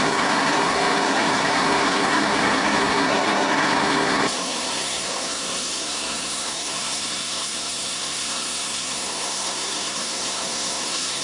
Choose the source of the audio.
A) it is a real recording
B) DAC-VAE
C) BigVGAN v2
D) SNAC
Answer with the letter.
D